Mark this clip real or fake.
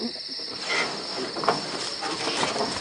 real